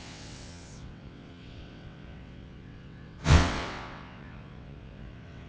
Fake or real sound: fake